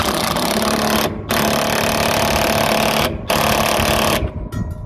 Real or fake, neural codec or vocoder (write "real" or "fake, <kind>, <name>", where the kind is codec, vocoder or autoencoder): real